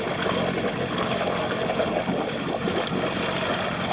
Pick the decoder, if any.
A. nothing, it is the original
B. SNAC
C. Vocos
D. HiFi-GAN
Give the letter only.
A